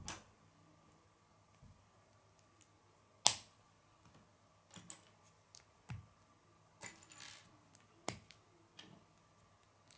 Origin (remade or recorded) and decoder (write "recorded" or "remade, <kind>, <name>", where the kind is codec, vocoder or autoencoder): recorded